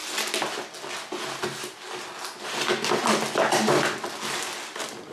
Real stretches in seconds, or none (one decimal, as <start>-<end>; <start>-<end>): 0.0-5.1